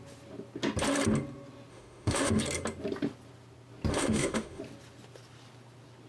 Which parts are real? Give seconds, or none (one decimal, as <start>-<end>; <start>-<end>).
0.0-1.7; 2.4-3.9; 4.6-6.1